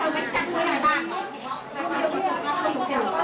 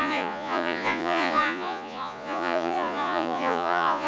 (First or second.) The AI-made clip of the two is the second